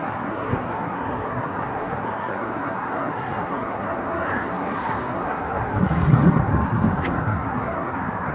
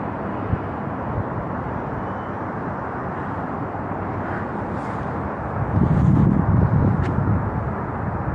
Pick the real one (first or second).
second